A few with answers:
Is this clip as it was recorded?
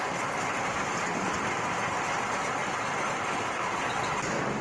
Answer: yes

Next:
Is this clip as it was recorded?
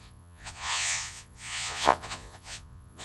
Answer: no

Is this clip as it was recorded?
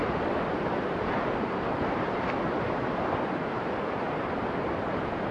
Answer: no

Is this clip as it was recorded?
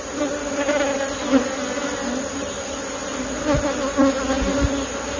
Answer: yes